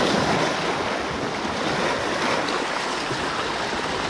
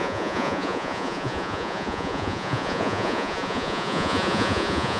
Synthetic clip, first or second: second